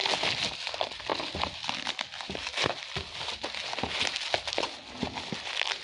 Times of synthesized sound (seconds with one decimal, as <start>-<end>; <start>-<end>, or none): none